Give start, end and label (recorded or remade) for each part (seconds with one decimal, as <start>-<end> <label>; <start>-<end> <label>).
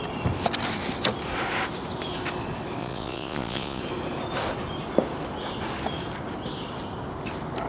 0.0-2.8 recorded; 2.8-3.8 remade; 3.8-7.7 recorded